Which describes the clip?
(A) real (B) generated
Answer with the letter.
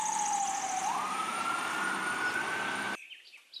B